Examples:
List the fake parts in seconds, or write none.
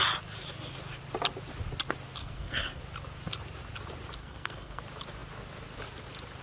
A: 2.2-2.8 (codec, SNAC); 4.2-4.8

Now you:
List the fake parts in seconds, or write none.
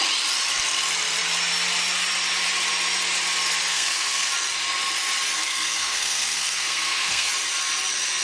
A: 3.7-4.3 (codec, SNAC); 5.4-7.3